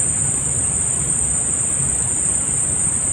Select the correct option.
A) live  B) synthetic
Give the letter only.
A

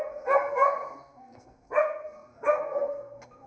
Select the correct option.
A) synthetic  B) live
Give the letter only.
A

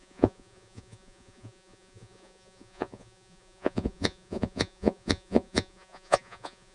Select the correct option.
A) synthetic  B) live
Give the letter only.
A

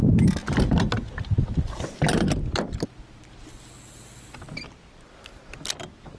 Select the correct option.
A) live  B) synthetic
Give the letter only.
A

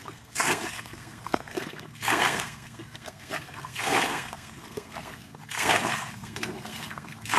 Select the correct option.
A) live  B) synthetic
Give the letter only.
B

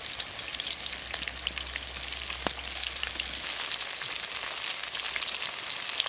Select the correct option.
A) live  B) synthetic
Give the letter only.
A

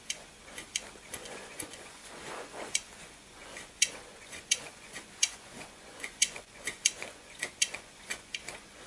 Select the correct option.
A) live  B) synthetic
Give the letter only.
B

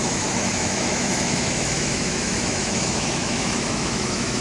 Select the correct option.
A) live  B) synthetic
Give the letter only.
B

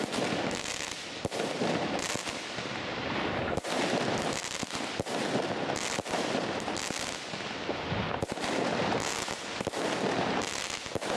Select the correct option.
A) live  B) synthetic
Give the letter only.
A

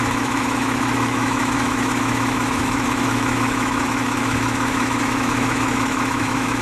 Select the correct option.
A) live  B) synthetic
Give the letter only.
B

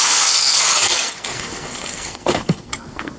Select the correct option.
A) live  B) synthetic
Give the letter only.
B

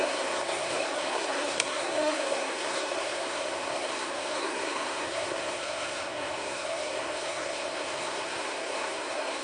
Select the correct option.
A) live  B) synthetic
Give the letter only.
B